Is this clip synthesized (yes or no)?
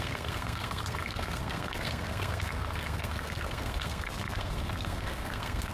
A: yes